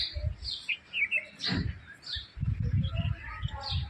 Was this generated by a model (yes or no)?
no